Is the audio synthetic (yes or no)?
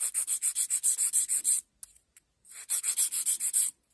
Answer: no